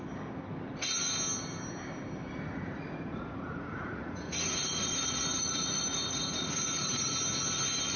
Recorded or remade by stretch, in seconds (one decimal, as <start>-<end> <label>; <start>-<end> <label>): 0.0-2.3 recorded; 2.3-7.1 remade; 7.1-8.0 recorded

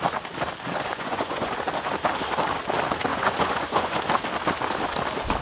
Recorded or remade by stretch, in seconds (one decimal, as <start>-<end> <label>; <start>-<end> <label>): 0.0-0.9 recorded; 0.9-1.5 remade; 1.5-3.1 recorded; 3.1-4.0 remade; 4.0-5.4 recorded

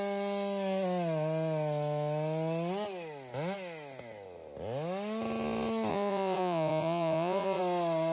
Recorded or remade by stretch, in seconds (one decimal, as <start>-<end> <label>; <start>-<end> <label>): 0.0-5.9 recorded; 5.9-7.6 remade; 7.6-8.1 recorded

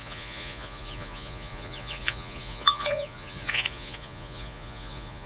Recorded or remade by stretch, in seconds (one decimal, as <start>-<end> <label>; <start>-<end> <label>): 0.0-5.3 remade